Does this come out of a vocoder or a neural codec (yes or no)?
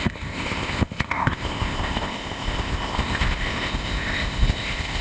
yes